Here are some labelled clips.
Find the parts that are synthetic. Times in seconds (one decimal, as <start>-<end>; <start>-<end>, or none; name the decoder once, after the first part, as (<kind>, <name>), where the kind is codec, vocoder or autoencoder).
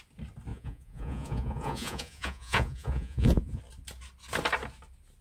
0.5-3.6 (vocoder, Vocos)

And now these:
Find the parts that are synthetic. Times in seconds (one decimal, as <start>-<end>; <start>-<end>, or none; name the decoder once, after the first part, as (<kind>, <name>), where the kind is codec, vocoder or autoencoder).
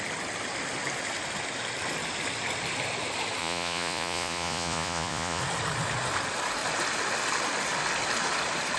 3.4-5.4 (vocoder, Vocos)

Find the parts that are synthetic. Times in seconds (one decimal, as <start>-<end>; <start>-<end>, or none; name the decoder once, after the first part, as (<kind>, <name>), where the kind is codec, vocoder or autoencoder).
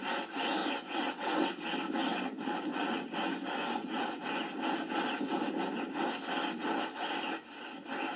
0.6-1.5 (vocoder, Vocos); 2.1-3.0; 3.6-4.3